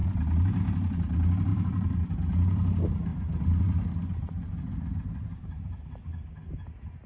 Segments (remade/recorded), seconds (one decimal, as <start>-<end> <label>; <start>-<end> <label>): 0.0-0.6 remade; 0.6-1.5 recorded; 1.5-2.1 remade; 2.1-3.1 recorded; 3.1-5.9 remade; 5.9-7.1 recorded